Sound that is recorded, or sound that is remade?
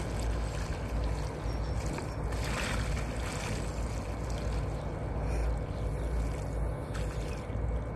recorded